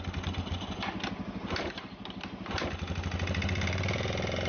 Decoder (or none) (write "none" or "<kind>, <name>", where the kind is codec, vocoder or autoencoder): none